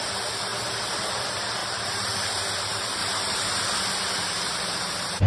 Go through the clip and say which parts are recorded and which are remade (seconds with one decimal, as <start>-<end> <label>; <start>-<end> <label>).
0.0-0.5 remade; 0.5-1.1 recorded; 1.1-3.0 remade; 3.0-5.3 recorded

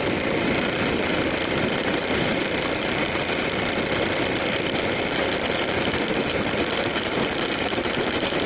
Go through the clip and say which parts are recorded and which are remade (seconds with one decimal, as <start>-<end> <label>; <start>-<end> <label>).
0.0-1.1 remade; 1.1-1.8 recorded; 1.8-8.5 remade

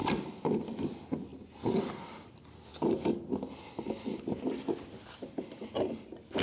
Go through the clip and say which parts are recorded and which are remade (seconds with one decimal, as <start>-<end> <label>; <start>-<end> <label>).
0.0-1.3 recorded; 1.3-1.9 remade; 1.9-6.4 recorded

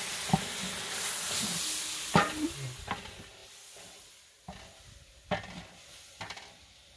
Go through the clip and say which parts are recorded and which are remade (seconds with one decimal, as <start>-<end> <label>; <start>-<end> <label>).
0.0-7.0 recorded

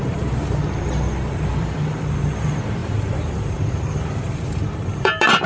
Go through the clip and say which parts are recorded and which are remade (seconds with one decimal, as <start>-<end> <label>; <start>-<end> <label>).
0.0-0.6 remade; 0.6-1.5 recorded; 1.5-5.5 remade

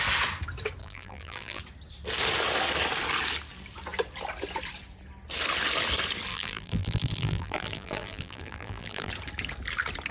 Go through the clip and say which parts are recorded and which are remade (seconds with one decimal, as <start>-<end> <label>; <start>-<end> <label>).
0.0-0.8 recorded; 0.8-1.6 remade; 1.6-6.3 recorded; 6.3-9.1 remade; 9.1-10.1 recorded